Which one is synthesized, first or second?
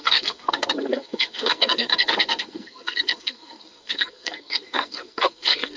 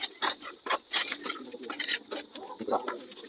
first